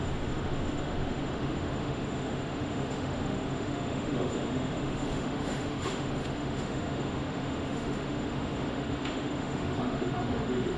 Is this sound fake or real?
fake